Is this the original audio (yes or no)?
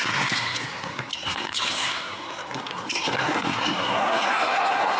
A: no